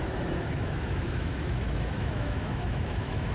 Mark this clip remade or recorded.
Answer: remade